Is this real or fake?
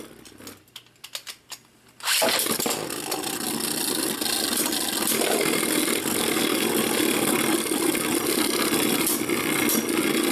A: real